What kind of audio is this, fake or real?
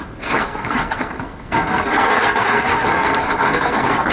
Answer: fake